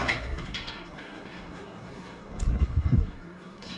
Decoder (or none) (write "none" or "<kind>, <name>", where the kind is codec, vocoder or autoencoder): codec, SNAC